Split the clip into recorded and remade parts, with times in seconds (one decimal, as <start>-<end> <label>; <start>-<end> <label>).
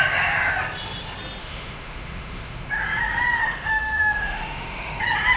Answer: 0.0-1.4 recorded; 1.4-2.7 remade; 2.7-3.4 recorded; 3.4-5.0 remade; 5.0-5.4 recorded